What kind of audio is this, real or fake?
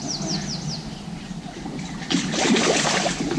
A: real